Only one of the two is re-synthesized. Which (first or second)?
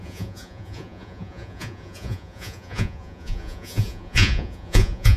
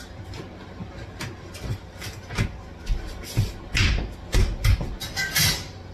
first